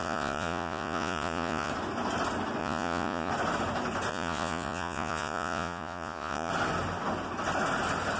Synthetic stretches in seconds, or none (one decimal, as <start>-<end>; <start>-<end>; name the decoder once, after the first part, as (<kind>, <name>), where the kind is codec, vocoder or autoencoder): 0.0-1.7 (vocoder, Vocos); 2.6-3.3; 4.1-6.5